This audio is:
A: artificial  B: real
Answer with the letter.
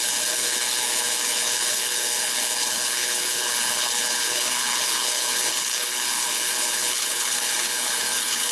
A